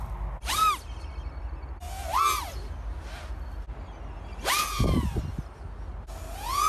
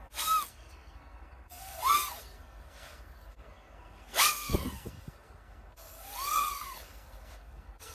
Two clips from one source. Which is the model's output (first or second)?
second